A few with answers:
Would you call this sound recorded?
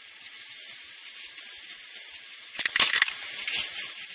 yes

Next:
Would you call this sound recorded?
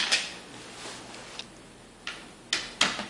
yes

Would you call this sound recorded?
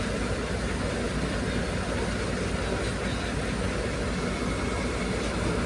yes